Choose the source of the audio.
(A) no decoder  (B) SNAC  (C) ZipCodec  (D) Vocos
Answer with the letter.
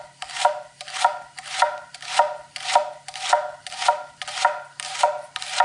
A